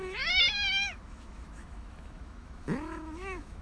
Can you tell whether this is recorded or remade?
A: remade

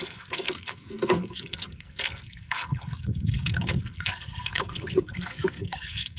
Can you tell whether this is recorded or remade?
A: remade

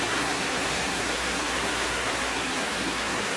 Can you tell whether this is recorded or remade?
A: remade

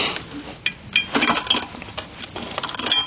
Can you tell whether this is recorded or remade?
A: recorded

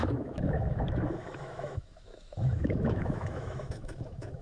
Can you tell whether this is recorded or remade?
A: remade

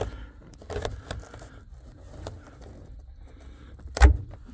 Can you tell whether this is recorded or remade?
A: recorded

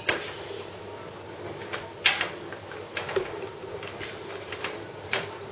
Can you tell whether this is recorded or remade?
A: recorded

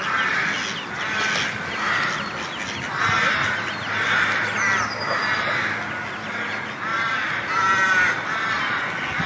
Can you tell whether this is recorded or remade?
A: recorded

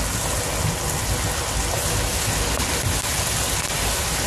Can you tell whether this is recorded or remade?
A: recorded